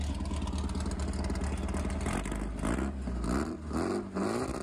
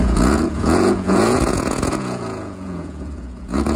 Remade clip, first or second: second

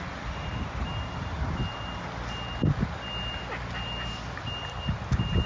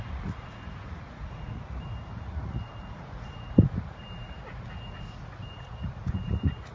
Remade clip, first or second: second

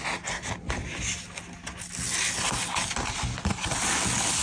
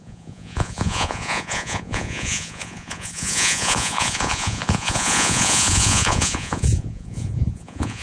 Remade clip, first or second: second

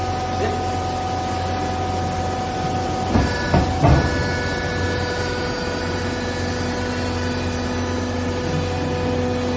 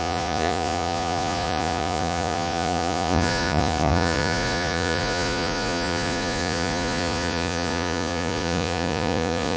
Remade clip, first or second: second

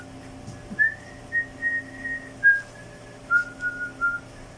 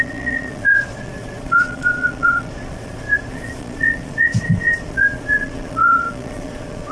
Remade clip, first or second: second